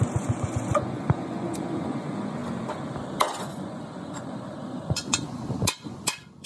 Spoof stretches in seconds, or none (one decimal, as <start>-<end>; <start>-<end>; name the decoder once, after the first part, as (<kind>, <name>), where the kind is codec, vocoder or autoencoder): 0.0-2.4 (vocoder, Vocos); 3.4-6.5